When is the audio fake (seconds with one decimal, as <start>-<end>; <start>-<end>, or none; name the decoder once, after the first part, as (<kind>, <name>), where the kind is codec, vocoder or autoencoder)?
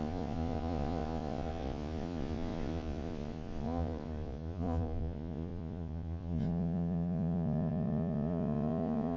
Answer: 0.0-9.2 (vocoder, Vocos)